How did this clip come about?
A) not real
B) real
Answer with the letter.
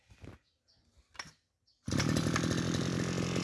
B